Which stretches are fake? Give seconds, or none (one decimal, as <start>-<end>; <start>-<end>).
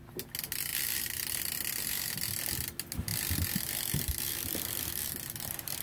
3.1-4.9